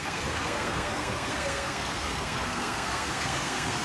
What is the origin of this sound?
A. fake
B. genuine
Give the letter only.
A